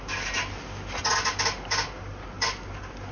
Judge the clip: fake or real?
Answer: real